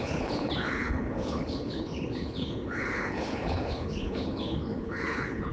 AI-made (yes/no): yes